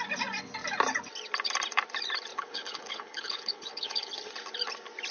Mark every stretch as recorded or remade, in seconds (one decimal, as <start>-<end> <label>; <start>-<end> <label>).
0.0-2.3 recorded; 2.3-4.3 remade; 4.3-5.1 recorded